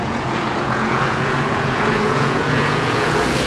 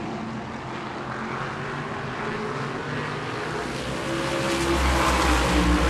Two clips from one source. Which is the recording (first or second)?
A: second